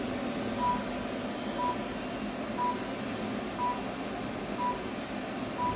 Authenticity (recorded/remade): recorded